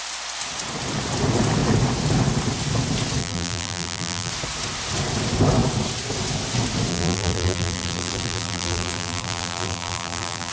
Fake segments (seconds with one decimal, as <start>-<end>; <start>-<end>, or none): 3.2-4.3; 6.9-10.5